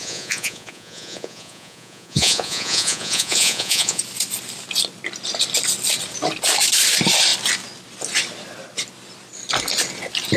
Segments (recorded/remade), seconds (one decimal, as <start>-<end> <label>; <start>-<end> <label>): 0.0-4.0 remade; 4.0-10.4 recorded